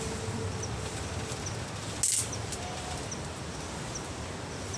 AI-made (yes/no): no